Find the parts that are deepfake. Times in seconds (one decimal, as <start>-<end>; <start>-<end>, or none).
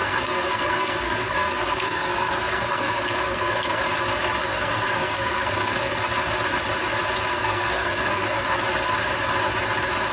0.0-3.8; 4.4-6.0; 7.3-8.6